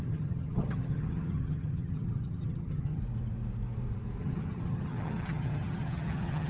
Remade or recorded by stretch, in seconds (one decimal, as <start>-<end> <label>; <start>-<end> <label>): 0.0-3.0 remade; 3.0-4.2 recorded; 4.2-6.5 remade